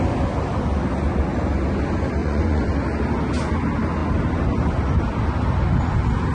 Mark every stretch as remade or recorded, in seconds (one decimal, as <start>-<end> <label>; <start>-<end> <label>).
0.0-2.2 recorded; 2.2-2.7 remade; 2.7-6.3 recorded